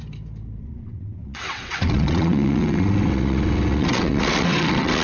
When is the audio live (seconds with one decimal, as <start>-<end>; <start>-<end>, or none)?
0.0-0.6